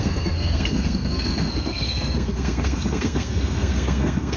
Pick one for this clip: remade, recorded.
remade